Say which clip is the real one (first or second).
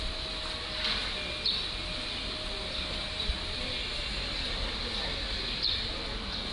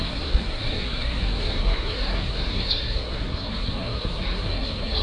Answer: first